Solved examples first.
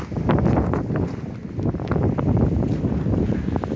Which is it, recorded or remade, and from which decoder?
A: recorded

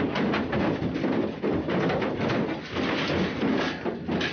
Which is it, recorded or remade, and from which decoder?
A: recorded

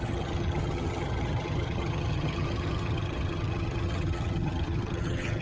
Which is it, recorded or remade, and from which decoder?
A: remade, vocoder, HiFi-GAN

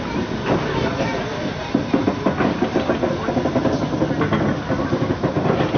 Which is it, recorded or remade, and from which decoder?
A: recorded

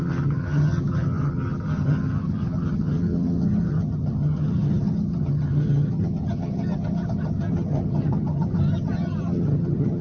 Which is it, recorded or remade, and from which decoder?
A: remade, vocoder, HiFi-GAN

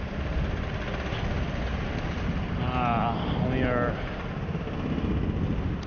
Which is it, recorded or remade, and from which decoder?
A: recorded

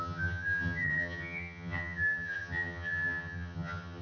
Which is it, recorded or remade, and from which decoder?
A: remade, vocoder, HiFi-GAN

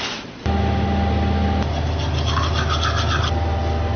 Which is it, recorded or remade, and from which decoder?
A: recorded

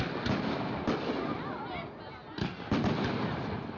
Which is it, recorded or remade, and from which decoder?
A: recorded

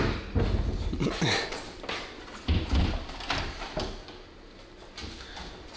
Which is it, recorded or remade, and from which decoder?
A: recorded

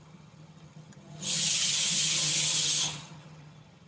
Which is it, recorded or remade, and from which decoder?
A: remade, vocoder, HiFi-GAN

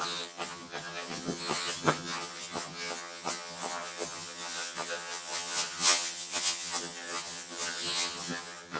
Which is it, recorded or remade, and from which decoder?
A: remade, vocoder, HiFi-GAN